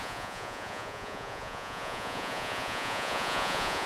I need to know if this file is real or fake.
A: fake